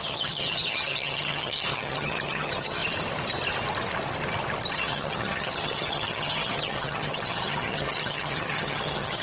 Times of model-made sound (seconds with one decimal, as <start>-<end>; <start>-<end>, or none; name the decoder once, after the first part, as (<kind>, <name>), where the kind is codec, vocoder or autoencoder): 0.0-2.8 (vocoder, HiFi-GAN); 4.7-9.2